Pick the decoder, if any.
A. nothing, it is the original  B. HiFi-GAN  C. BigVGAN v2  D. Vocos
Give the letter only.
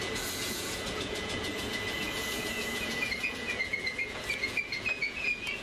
D